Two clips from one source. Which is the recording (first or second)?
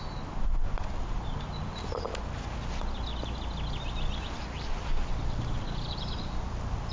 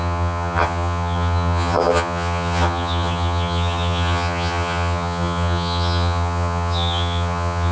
first